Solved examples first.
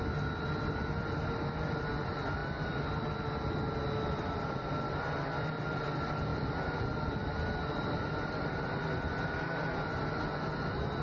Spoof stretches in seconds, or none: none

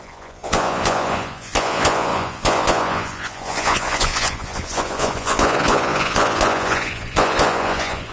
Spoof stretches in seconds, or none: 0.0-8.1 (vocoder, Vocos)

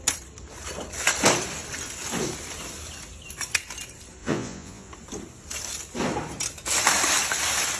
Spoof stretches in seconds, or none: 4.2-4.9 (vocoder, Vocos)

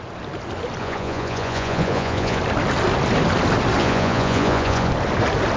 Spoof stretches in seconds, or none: 0.8-2.4 (vocoder, Vocos); 3.8-4.9

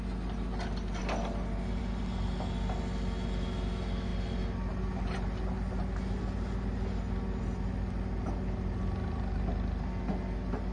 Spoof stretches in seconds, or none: none